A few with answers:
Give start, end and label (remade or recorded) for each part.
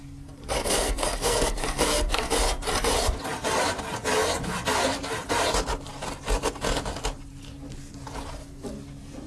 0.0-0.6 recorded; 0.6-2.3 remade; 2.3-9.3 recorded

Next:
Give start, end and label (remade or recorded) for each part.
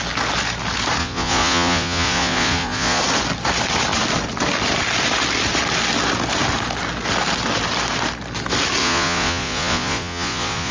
0.0-1.0 recorded; 1.0-3.0 remade; 3.0-8.8 recorded; 8.8-10.7 remade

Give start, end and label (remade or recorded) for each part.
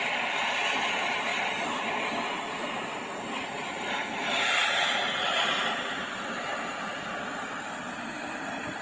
0.0-8.8 recorded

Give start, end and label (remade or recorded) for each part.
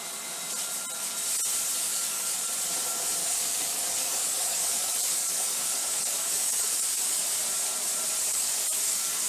0.0-1.8 recorded; 1.8-2.5 remade; 2.5-3.2 recorded; 3.2-7.2 remade; 7.2-8.3 recorded; 8.3-9.3 remade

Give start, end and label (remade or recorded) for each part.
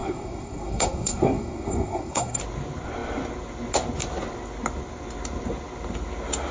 0.0-2.4 remade; 2.4-6.5 recorded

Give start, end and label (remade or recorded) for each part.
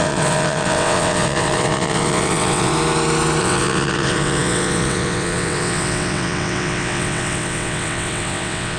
0.0-2.7 remade; 2.7-3.4 recorded; 3.4-8.8 remade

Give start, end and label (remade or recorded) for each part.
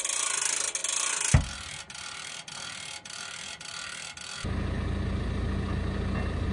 0.0-6.5 recorded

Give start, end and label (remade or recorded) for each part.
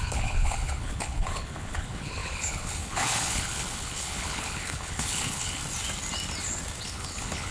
0.0-5.6 remade; 5.6-6.8 recorded; 6.8-7.5 remade